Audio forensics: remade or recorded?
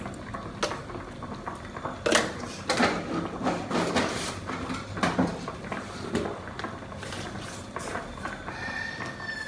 recorded